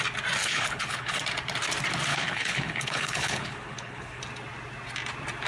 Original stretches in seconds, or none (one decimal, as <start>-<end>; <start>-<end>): 0.0-0.4; 1.2-2.1; 4.2-5.5